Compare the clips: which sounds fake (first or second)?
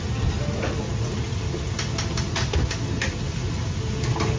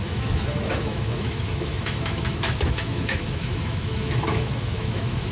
second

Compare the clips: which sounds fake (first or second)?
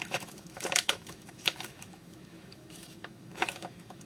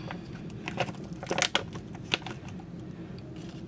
first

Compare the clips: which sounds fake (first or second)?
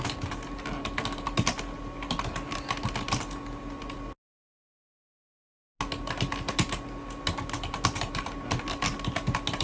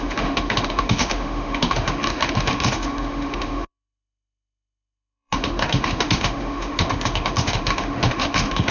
second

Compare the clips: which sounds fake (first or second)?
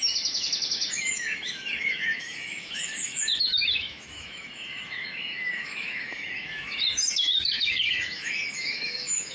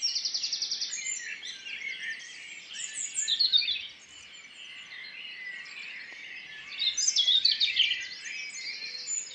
first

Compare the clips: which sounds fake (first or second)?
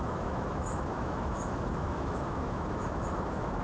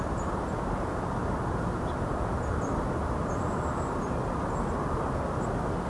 first